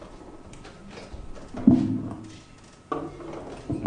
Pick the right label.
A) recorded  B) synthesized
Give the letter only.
A